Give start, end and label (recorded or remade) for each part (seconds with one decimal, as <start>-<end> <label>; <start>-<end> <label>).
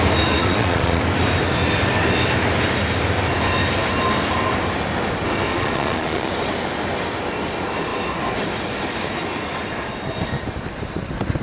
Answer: 0.0-0.4 recorded; 0.4-1.0 remade; 1.0-5.5 recorded; 5.5-6.3 remade; 6.3-11.4 recorded